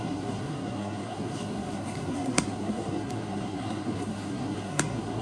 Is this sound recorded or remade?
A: remade